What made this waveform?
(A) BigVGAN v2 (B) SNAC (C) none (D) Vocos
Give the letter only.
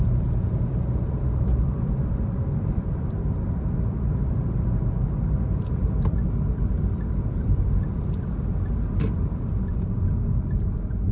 A